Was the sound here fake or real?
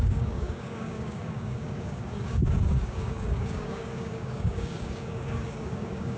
fake